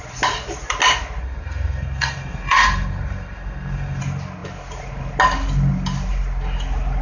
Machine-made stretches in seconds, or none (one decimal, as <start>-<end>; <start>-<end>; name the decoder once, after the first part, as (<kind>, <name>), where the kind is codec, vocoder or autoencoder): 1.2-4.0 (codec, SNAC)